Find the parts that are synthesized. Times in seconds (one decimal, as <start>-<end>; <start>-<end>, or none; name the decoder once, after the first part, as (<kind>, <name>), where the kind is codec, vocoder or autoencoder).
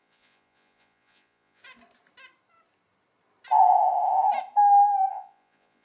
0.0-1.6 (vocoder, Vocos); 5.1-5.8